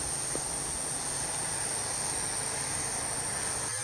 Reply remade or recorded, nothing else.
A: recorded